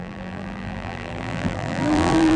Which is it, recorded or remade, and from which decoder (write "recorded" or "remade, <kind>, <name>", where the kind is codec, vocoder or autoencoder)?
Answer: remade, vocoder, BigVGAN v2